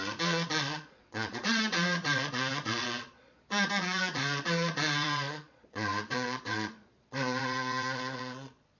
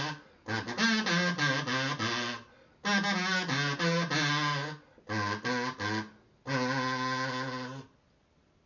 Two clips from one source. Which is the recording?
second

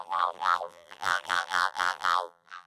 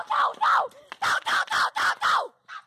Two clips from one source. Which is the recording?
second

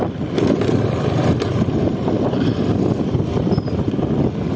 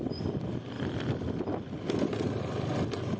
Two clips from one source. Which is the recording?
second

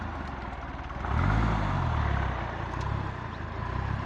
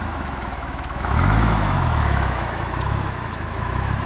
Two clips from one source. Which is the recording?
first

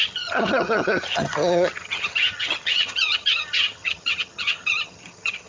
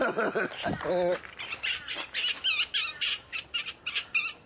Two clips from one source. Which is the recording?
second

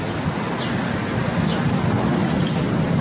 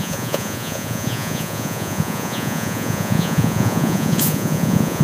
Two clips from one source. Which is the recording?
first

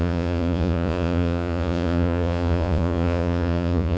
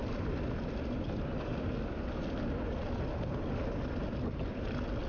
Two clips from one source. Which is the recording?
second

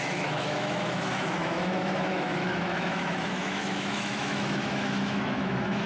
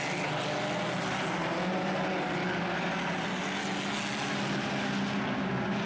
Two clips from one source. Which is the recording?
second